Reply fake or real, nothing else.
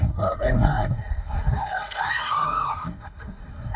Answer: fake